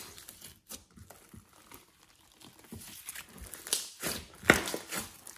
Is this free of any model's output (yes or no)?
yes